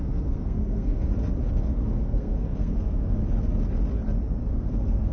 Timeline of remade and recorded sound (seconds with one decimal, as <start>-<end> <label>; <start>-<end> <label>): 0.0-1.1 remade; 1.1-1.6 recorded; 1.6-3.2 remade; 3.2-4.5 recorded; 4.5-5.1 remade